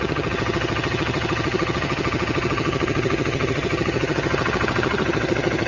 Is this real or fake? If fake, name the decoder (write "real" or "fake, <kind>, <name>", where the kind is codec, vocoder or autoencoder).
fake, vocoder, HiFi-GAN